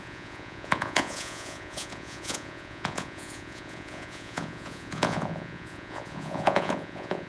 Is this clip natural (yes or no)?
no